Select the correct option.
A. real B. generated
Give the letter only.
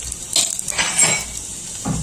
A